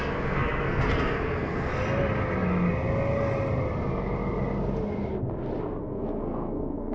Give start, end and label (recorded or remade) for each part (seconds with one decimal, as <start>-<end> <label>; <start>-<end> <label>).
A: 0.0-1.7 remade; 1.7-5.8 recorded; 5.8-6.9 remade